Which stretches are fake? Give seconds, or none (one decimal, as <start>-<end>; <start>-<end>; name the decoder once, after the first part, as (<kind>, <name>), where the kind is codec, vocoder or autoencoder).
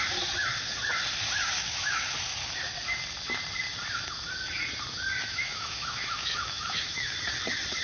1.6-2.1 (autoencoder, DAC-VAE); 5.1-7.2